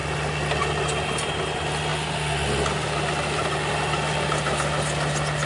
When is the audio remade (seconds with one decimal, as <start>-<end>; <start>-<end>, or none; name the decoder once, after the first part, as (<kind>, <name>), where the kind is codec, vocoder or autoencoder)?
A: none